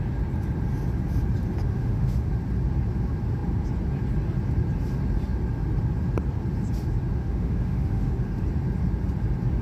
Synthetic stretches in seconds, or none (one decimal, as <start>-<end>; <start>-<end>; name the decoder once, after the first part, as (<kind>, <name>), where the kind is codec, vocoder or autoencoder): 1.7-2.3 (autoencoder, DAC-VAE); 7.2-8.4